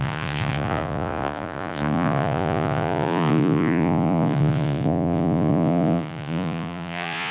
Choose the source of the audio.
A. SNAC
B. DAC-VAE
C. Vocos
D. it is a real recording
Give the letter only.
C